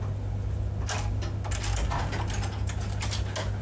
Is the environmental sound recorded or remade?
recorded